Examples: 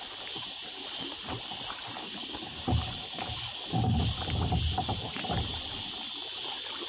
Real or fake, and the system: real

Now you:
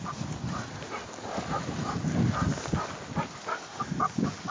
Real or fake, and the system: real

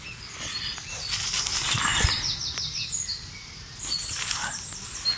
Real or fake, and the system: real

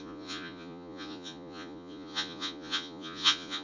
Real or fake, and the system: fake, vocoder, Vocos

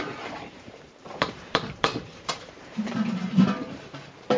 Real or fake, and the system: fake, vocoder, BigVGAN v2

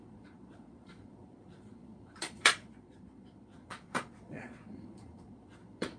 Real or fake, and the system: fake, vocoder, Vocos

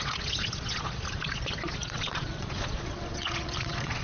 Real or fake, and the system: fake, vocoder, Vocos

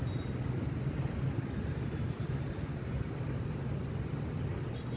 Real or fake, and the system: real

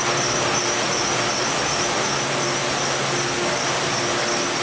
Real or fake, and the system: real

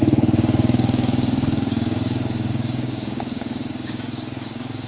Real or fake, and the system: fake, codec, DAC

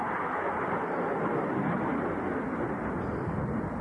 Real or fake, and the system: real